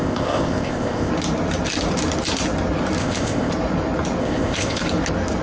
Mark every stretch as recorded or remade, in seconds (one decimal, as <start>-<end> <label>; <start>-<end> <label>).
0.0-1.1 remade; 1.1-3.0 recorded; 3.0-3.5 remade; 3.5-4.2 recorded; 4.2-4.8 remade; 4.8-5.4 recorded